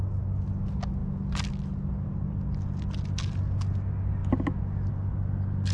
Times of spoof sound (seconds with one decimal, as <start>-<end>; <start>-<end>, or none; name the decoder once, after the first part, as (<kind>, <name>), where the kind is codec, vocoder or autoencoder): none